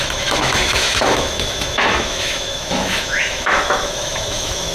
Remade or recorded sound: remade